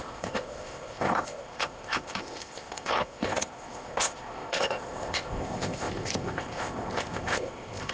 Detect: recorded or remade remade